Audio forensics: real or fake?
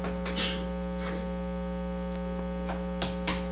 real